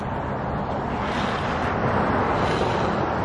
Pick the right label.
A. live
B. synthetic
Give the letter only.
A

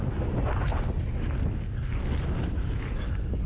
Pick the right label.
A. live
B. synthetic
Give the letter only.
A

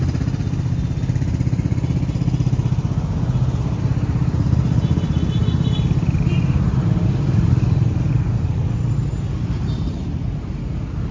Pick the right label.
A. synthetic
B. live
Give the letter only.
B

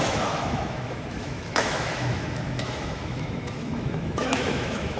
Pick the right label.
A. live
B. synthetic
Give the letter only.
B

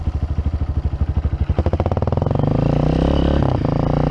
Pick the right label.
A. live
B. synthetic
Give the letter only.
A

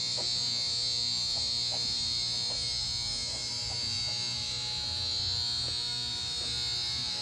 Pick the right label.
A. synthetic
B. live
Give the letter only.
A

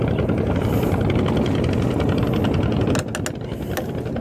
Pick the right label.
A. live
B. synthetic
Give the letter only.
A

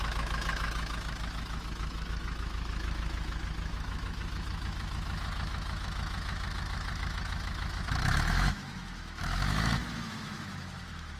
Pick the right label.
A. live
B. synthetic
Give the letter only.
B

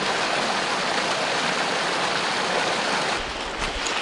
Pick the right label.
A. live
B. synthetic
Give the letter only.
A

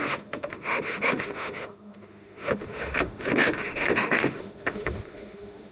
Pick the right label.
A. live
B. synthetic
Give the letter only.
B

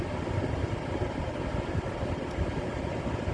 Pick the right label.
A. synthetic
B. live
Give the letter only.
B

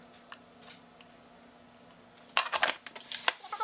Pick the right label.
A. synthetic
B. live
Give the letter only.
B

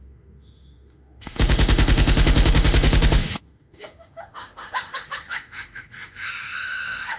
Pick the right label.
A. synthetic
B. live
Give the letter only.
A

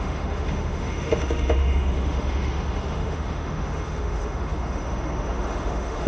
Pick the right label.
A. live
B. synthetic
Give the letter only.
B